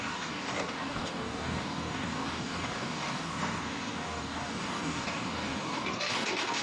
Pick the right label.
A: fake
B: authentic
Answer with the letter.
A